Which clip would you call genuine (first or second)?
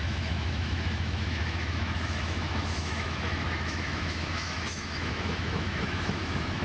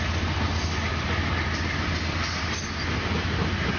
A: second